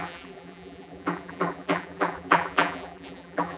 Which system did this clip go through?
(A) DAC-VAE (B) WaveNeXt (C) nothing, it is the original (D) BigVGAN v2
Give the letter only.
D